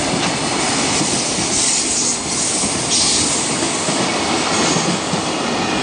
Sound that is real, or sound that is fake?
real